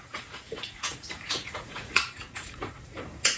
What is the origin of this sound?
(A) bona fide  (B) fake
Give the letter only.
B